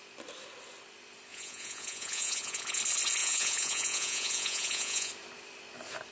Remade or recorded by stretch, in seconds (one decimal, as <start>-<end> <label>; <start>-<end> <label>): 0.0-1.3 recorded; 1.3-2.8 remade; 2.8-3.2 recorded; 3.2-5.1 remade; 5.1-6.1 recorded